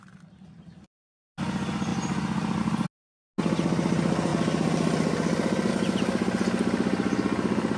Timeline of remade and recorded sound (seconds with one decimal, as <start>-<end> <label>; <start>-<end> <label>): 0.0-7.8 recorded